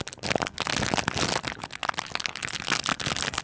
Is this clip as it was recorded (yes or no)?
yes